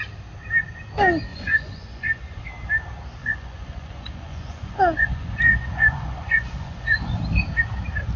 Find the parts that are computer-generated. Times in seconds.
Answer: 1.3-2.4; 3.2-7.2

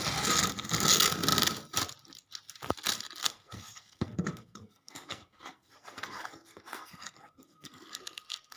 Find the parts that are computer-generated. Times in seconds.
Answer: 3.2-8.6

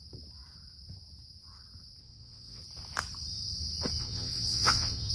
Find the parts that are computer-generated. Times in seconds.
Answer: 2.0-2.6; 4.0-5.1

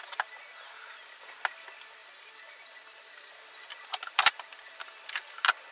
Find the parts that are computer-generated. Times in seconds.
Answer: 2.0-3.3